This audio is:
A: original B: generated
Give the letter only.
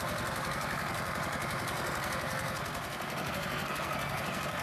B